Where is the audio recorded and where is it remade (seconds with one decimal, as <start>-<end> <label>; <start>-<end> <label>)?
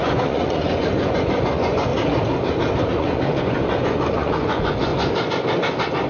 0.0-1.9 remade; 1.9-2.9 recorded; 2.9-4.9 remade; 4.9-6.1 recorded